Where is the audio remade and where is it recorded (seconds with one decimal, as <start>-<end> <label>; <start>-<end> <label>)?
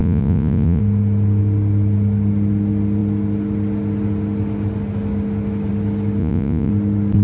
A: 0.0-0.8 remade; 0.8-6.2 recorded; 6.2-6.7 remade; 6.7-7.2 recorded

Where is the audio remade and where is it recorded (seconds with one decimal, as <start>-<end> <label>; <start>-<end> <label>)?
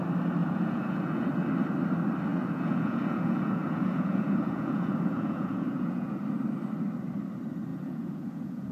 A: 0.0-0.4 recorded; 0.4-1.3 remade; 1.3-2.3 recorded; 2.3-6.2 remade; 6.2-7.7 recorded; 7.7-8.7 remade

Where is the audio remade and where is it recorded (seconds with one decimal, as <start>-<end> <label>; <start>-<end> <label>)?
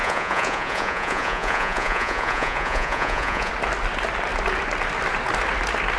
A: 0.0-3.5 remade; 3.5-6.0 recorded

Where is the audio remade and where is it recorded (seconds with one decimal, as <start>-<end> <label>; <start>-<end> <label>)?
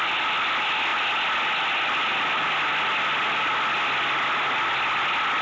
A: 0.0-5.4 recorded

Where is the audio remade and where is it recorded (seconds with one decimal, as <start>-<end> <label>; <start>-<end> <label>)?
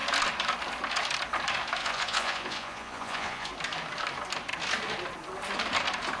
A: 0.0-1.8 recorded; 1.8-3.5 remade; 3.5-6.2 recorded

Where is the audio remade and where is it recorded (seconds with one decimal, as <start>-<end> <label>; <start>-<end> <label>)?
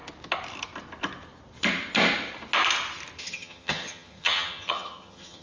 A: 0.0-3.2 recorded; 3.2-5.4 remade